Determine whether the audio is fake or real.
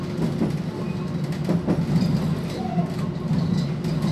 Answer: real